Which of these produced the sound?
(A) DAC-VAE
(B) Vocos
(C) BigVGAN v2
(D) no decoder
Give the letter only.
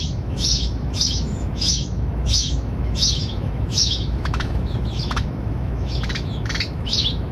A